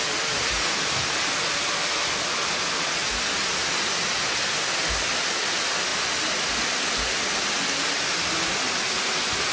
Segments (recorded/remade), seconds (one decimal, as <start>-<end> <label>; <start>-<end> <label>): 0.0-9.5 recorded